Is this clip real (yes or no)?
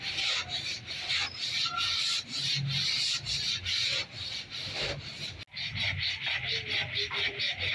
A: yes